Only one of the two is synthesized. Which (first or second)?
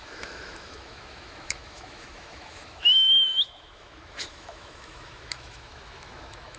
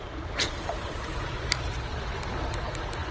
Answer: first